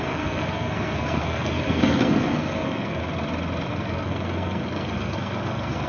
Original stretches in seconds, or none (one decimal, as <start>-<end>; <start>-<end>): 3.0-3.7